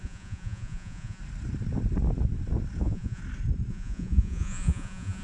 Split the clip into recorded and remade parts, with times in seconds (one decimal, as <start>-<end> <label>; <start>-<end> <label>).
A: 0.0-1.2 remade; 1.2-2.8 recorded; 2.8-3.2 remade; 3.2-3.7 recorded; 3.7-5.2 remade